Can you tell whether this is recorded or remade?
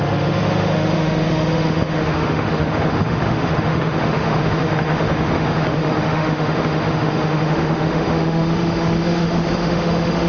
remade